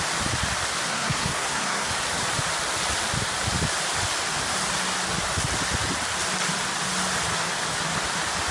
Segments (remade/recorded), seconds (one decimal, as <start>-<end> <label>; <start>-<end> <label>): 0.0-0.9 recorded; 0.9-1.9 remade; 1.9-8.5 recorded

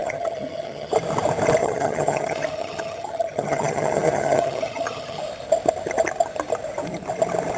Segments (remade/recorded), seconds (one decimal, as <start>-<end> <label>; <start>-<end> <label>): 0.0-0.9 remade; 0.9-1.6 recorded; 1.6-5.2 remade; 5.2-7.6 recorded

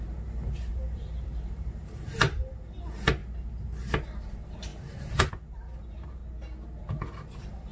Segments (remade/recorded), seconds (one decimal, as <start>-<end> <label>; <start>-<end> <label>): 0.0-3.2 remade; 3.2-3.9 recorded; 3.9-6.2 remade; 6.2-6.8 recorded; 6.8-7.7 remade

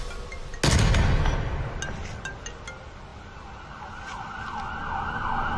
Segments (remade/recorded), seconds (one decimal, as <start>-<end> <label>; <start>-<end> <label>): 0.0-5.6 recorded

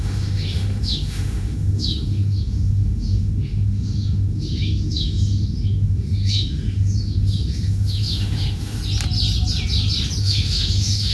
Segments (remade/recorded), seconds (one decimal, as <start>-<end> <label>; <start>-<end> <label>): 0.0-8.8 remade; 8.8-10.2 recorded; 10.2-11.1 remade

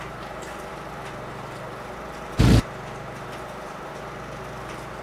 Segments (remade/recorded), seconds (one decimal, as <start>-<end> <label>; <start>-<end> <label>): 0.0-5.0 recorded

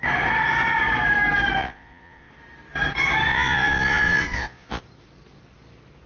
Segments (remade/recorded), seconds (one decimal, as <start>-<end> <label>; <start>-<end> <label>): 0.0-1.6 recorded; 1.6-2.3 remade; 2.3-3.3 recorded; 3.3-4.8 remade; 4.8-6.1 recorded

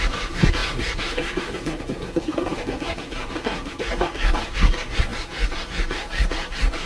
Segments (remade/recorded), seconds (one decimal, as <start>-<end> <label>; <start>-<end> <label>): 0.0-6.9 remade